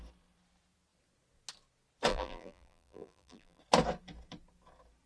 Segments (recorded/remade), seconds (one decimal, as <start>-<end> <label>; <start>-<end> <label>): 0.0-2.1 recorded; 2.1-3.6 remade; 3.6-5.1 recorded